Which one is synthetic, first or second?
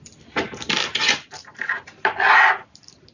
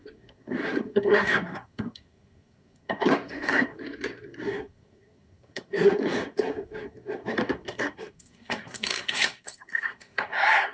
second